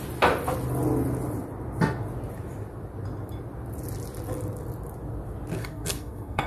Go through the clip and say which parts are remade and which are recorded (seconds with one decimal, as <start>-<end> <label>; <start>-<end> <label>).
0.0-5.6 recorded; 5.6-6.5 remade